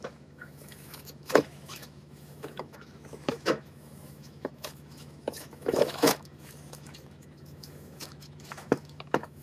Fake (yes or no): yes